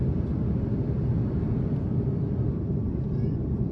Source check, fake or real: real